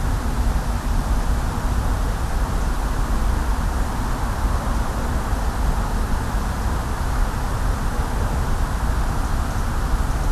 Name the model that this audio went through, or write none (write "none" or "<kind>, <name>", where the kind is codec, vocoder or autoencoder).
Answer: none